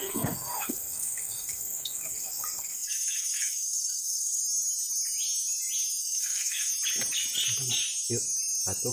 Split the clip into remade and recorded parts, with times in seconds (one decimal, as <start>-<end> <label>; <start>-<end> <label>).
0.0-4.4 remade; 4.4-6.0 recorded; 6.0-6.7 remade; 6.7-8.9 recorded

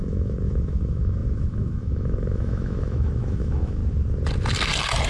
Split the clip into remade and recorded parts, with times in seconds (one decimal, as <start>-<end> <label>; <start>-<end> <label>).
0.0-3.8 remade; 3.8-5.1 recorded

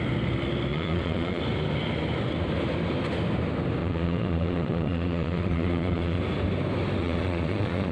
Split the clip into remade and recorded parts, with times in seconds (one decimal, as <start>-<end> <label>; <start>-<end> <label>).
0.0-0.7 recorded; 0.7-1.4 remade; 1.4-3.8 recorded; 3.8-6.2 remade; 6.2-7.0 recorded; 7.0-7.9 remade